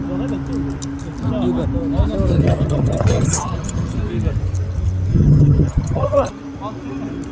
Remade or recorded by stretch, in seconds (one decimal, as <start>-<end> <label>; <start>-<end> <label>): 0.0-2.3 recorded; 2.3-4.0 remade; 4.0-5.1 recorded; 5.1-6.3 remade; 6.3-7.3 recorded